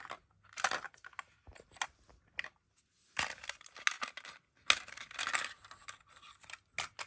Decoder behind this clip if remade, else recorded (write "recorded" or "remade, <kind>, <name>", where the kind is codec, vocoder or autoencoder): recorded